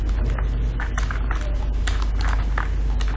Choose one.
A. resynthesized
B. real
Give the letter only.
B